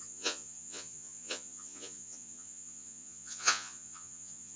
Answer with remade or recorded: remade